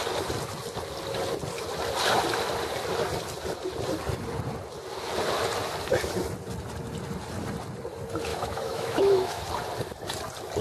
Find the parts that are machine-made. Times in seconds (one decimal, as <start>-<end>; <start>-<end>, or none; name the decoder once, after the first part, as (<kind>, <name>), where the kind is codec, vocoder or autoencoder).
8.3-9.4 (autoencoder, DAC-VAE)